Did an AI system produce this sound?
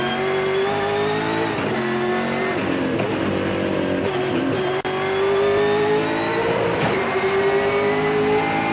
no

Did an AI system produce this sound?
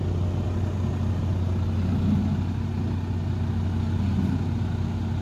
no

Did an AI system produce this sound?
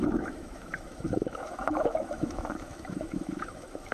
yes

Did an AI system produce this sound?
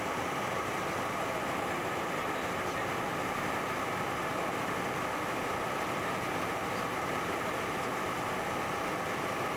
no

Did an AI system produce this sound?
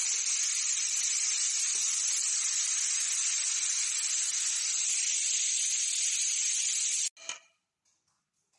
no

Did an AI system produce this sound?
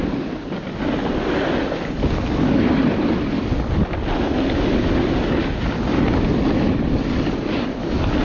no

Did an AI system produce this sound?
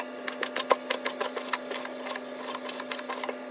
no